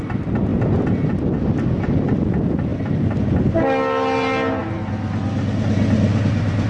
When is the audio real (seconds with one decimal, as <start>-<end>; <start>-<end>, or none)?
0.0-6.7